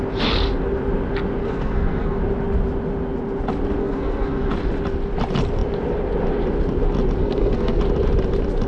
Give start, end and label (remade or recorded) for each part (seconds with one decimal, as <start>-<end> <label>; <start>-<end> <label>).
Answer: 0.0-1.4 recorded; 1.4-2.2 remade; 2.2-3.8 recorded; 3.8-4.5 remade; 4.5-7.2 recorded; 7.2-7.8 remade; 7.8-8.7 recorded

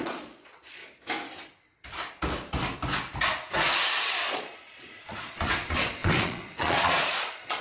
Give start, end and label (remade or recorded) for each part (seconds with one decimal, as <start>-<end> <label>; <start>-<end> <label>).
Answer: 0.0-0.8 remade; 0.8-4.3 recorded; 4.3-7.6 remade

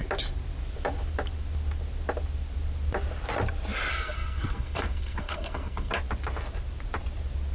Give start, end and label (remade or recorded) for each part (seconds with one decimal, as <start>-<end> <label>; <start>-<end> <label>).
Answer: 0.0-3.9 recorded; 3.9-5.9 remade; 5.9-7.5 recorded

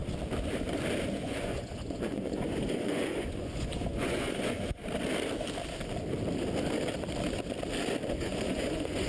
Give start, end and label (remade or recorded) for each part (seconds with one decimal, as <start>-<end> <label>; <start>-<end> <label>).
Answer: 0.0-1.1 recorded; 1.1-4.8 remade; 4.8-8.1 recorded; 8.1-9.1 remade

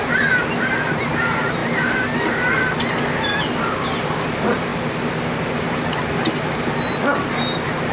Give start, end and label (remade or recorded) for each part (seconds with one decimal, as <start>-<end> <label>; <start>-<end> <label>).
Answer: 0.0-7.9 recorded

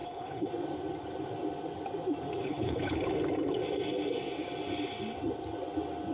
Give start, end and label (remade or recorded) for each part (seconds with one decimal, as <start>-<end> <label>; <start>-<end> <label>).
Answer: 0.0-0.5 remade; 0.5-2.4 recorded; 2.4-3.0 remade; 3.0-6.1 recorded